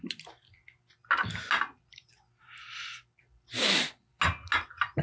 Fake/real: real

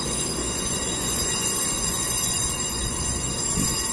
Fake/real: fake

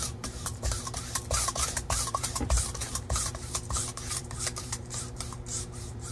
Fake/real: fake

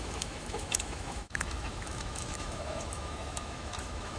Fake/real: fake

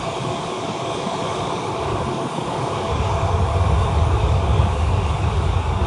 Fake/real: fake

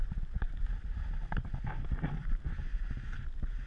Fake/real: real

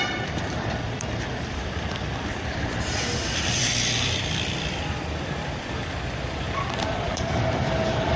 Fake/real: fake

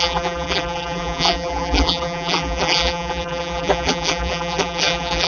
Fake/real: fake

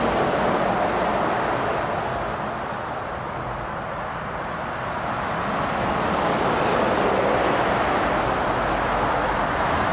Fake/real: real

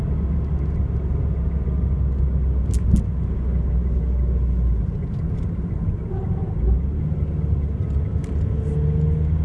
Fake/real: real